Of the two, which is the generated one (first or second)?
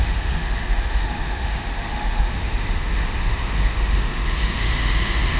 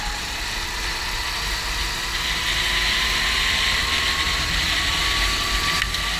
first